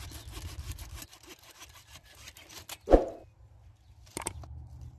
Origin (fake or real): real